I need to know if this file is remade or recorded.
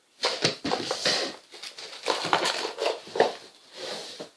recorded